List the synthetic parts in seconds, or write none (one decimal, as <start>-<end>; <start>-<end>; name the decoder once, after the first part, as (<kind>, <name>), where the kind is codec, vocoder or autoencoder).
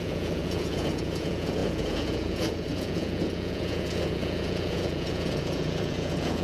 0.0-6.4 (vocoder, Vocos)